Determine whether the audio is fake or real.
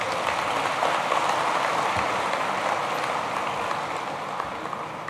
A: real